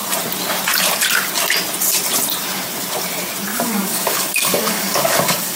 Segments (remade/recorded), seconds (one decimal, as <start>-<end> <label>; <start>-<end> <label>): 0.0-3.5 recorded; 3.5-5.6 remade